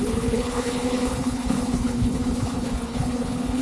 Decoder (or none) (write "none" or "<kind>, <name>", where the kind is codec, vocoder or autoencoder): codec, HILCodec